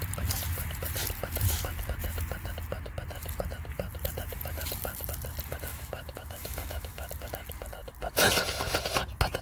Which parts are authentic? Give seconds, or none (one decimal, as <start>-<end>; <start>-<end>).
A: 0.0-5.7; 7.1-9.4